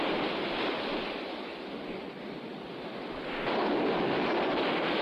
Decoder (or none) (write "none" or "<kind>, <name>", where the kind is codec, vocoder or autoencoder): none